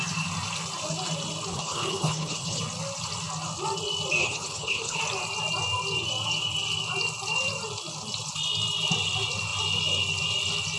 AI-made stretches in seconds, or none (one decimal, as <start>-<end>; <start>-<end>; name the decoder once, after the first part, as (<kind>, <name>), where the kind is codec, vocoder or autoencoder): 1.5-2.6 (codec, HILCodec); 4.2-5.0